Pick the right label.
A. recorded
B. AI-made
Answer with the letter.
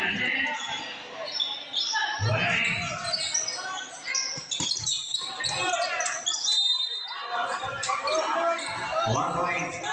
A